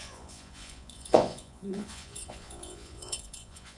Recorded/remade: remade